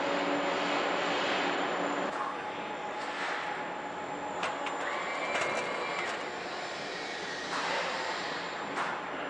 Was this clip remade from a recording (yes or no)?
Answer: no